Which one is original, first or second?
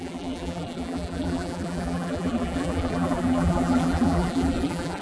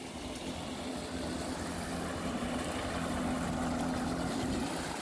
second